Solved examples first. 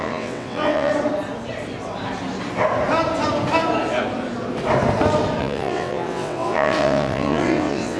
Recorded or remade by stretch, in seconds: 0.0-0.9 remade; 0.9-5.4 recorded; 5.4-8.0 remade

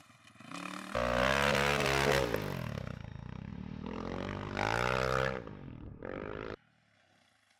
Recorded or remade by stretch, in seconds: 0.0-3.5 recorded; 3.5-4.5 remade; 4.5-6.0 recorded; 6.0-6.8 remade; 6.8-7.6 recorded

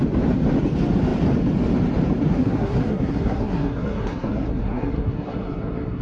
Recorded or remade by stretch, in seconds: 0.0-2.3 recorded; 2.3-6.0 remade

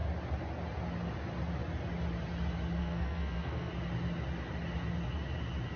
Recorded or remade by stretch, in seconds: 0.0-2.8 recorded; 2.8-3.7 remade; 3.7-5.8 recorded

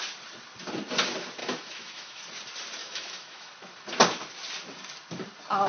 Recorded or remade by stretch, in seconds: 0.0-1.4 recorded; 1.4-2.2 remade; 2.2-2.8 recorded; 2.8-3.5 remade; 3.5-5.7 recorded